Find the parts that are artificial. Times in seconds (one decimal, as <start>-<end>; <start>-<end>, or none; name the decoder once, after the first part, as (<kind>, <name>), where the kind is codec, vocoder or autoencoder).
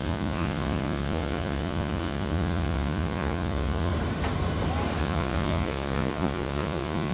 0.0-3.9 (vocoder, Vocos); 5.0-7.1